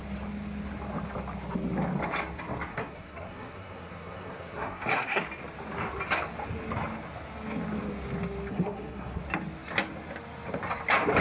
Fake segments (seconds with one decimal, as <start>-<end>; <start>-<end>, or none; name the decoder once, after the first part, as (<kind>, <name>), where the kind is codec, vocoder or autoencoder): 2.7-5.2 (codec, SNAC); 8.5-9.2

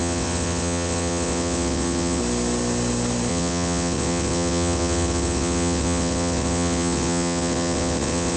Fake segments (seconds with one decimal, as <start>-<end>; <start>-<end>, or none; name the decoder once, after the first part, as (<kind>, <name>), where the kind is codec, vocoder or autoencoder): 0.0-2.2 (vocoder, WaveNeXt); 3.3-8.4

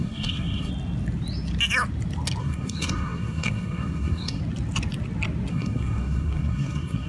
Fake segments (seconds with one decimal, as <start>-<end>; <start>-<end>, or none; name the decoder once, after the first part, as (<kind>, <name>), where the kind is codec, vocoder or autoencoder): 0.0-0.7 (codec, SNAC); 2.4-4.4; 5.5-7.1